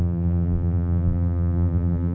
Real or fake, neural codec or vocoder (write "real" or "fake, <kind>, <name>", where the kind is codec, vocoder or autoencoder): fake, vocoder, BigVGAN v2